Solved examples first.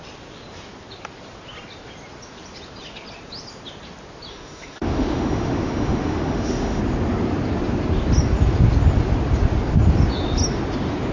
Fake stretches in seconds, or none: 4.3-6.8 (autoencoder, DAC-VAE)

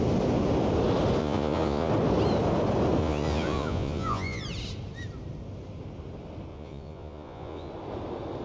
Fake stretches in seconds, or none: 1.2-1.9 (vocoder, Vocos); 3.0-4.4; 6.5-7.7